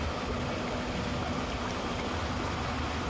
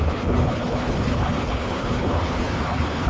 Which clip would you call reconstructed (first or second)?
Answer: second